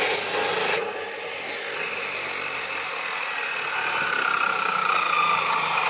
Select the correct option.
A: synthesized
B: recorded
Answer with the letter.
B